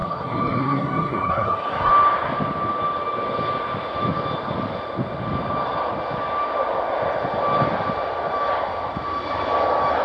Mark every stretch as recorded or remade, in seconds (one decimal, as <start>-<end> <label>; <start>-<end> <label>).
0.0-1.9 remade; 1.9-10.0 recorded